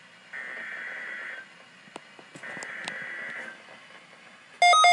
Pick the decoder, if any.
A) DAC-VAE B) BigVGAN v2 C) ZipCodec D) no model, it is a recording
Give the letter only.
D